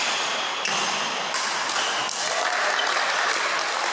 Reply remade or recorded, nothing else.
recorded